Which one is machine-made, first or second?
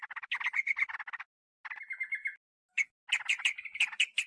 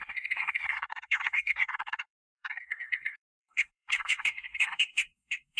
second